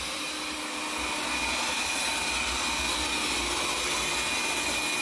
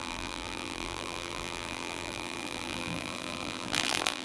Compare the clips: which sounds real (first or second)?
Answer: first